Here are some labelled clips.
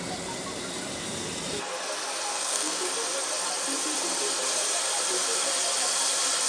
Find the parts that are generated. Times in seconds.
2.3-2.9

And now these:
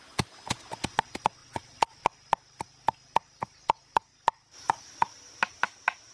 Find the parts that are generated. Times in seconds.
1.4-2.0

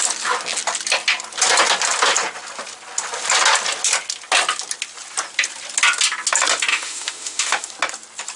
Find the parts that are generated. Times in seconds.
6.7-7.7

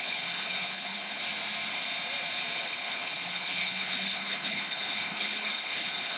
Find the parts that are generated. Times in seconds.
0.0-1.2; 2.6-6.2

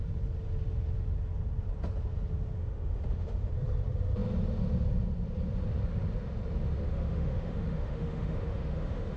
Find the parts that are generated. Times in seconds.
2.6-3.5; 6.9-9.2

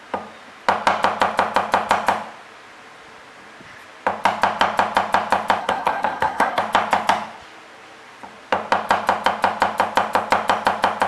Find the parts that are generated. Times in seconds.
5.6-6.6

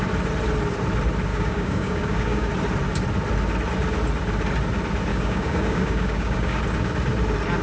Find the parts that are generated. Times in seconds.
1.3-2.5; 5.1-6.6

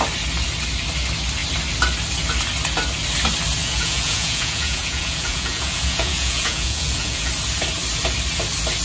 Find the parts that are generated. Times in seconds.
3.6-7.3